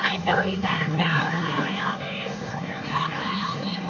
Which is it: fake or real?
fake